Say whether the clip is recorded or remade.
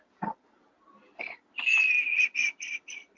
recorded